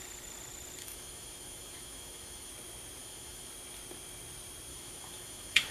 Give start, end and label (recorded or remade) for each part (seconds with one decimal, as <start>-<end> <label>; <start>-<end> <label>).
0.0-0.8 recorded; 0.8-2.5 remade; 2.5-3.0 recorded; 3.0-3.5 remade; 3.5-4.7 recorded; 4.7-5.7 remade